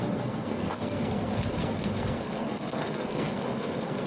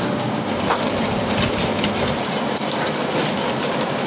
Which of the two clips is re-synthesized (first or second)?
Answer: first